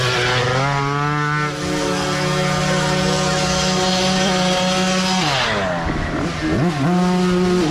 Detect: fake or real real